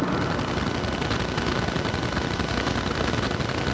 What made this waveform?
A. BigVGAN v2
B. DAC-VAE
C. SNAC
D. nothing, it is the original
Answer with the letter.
D